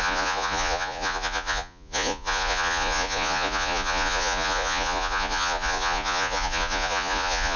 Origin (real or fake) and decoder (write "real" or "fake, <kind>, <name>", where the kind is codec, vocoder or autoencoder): fake, vocoder, Vocos